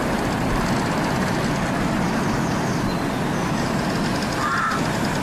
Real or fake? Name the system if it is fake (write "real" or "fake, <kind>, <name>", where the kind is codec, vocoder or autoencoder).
real